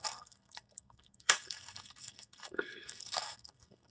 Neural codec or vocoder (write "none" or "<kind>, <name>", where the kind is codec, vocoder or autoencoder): codec, SNAC